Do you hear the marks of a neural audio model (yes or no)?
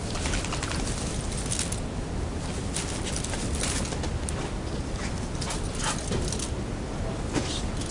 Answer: no